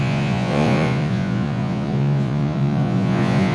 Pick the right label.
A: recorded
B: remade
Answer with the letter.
B